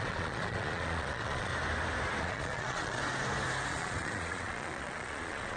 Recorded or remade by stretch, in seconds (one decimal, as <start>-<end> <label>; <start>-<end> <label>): 0.0-1.5 remade; 1.5-2.2 recorded; 2.2-3.0 remade; 3.0-3.7 recorded; 3.7-5.6 remade